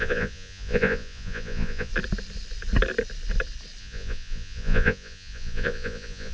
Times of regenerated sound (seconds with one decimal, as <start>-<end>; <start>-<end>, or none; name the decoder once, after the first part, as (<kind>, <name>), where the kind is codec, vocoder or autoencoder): 0.0-1.9 (vocoder, Vocos); 3.8-6.3